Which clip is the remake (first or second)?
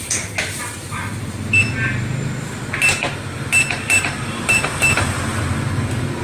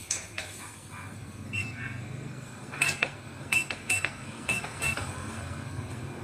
second